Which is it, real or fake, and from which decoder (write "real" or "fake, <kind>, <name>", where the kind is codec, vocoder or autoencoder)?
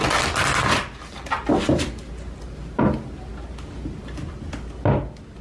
real